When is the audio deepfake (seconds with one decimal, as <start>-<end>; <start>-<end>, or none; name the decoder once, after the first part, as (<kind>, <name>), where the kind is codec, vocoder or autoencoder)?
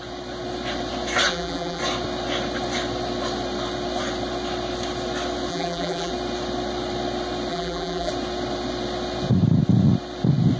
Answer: 1.3-1.8 (vocoder, BigVGAN v2); 5.5-6.1; 7.5-8.1